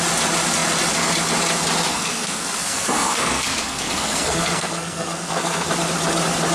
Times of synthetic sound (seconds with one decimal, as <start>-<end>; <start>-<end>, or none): 1.9-5.7

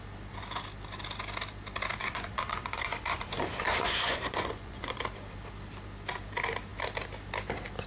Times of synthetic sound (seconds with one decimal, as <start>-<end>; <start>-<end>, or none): 2.0-5.0

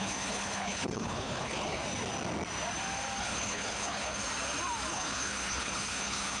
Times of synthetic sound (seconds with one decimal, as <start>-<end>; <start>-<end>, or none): 0.0-1.8; 3.2-4.2; 4.9-6.4

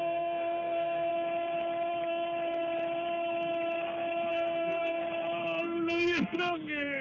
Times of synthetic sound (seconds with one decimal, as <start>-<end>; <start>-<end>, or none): 0.0-1.1; 4.3-5.0; 5.6-7.0

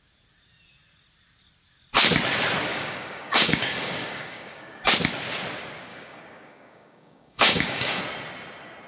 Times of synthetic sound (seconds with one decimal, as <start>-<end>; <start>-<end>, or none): 2.7-4.9; 5.9-8.0

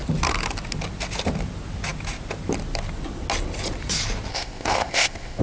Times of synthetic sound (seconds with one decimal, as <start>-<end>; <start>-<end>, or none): 4.3-5.4

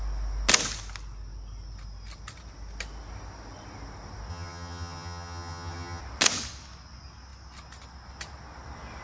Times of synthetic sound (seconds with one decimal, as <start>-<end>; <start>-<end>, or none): 4.3-6.0

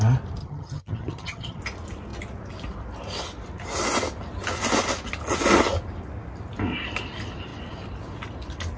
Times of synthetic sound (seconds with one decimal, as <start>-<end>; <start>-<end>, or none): 0.4-1.6